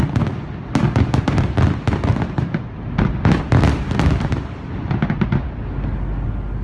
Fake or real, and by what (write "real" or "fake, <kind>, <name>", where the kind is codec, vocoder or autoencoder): real